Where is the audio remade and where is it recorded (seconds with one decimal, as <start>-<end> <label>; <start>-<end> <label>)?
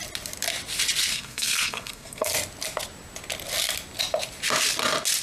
0.0-1.1 recorded; 1.1-2.3 remade; 2.3-5.2 recorded